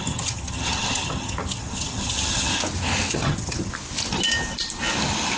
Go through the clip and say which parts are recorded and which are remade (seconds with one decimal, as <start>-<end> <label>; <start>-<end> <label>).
0.0-2.5 remade; 2.5-3.1 recorded; 3.1-3.7 remade; 3.7-5.4 recorded

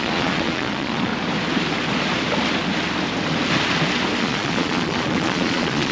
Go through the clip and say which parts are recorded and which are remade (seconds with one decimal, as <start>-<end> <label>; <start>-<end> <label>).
0.0-1.1 remade; 1.1-4.2 recorded; 4.2-5.9 remade

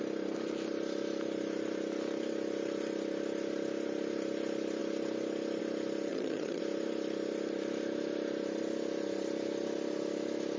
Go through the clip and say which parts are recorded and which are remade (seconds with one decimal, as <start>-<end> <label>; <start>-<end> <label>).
0.0-6.1 recorded; 6.1-6.6 remade; 6.6-10.6 recorded

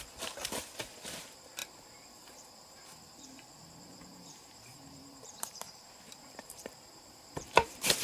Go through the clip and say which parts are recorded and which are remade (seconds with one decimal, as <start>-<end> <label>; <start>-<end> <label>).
0.0-8.0 remade

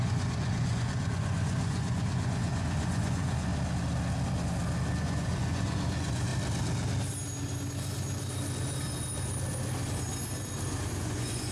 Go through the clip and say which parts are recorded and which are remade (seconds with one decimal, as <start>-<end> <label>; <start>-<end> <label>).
0.0-3.5 remade; 3.5-5.0 recorded; 5.0-6.3 remade; 6.3-11.0 recorded; 11.0-11.5 remade

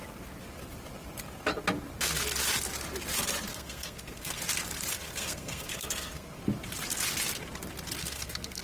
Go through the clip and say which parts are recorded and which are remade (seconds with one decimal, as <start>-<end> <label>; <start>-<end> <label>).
0.0-3.5 recorded; 3.5-4.4 remade; 4.4-4.9 recorded; 4.9-6.4 remade; 6.4-8.0 recorded; 8.0-8.6 remade

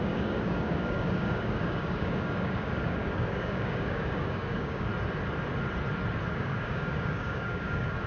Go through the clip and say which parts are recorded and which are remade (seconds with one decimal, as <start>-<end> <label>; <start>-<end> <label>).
0.0-4.9 remade; 4.9-6.3 recorded; 6.3-8.1 remade

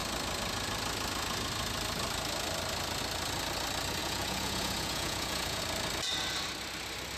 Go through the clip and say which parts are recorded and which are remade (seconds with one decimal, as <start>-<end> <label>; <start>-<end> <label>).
0.0-4.0 recorded; 4.0-5.6 remade; 5.6-7.2 recorded